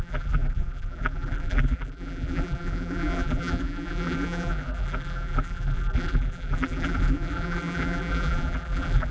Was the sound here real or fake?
fake